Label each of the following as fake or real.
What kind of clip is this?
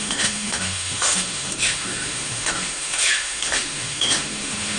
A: fake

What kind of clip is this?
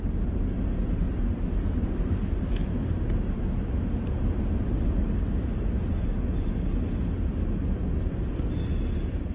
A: real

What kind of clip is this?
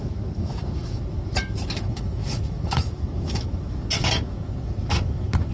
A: fake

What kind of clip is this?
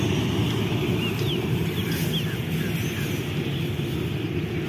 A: real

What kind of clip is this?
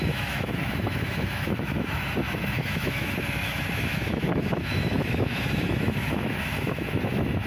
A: fake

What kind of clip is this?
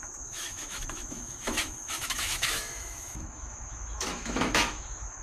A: fake